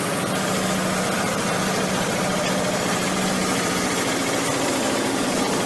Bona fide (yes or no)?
yes